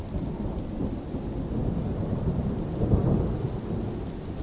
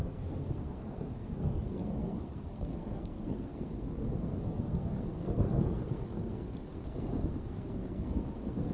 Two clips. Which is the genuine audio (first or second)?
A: first